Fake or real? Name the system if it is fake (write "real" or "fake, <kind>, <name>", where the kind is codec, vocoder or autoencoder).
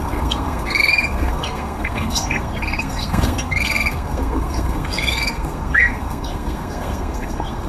fake, codec, SNAC